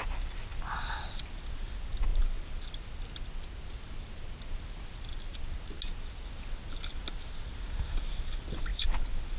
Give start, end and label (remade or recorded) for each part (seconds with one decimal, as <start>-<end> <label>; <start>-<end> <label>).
0.0-9.4 recorded